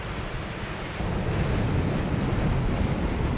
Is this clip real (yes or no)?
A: yes